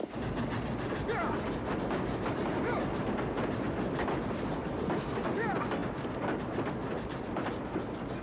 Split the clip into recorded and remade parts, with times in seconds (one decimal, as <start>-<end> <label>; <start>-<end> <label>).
0.0-8.2 recorded